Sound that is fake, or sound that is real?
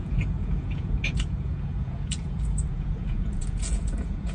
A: fake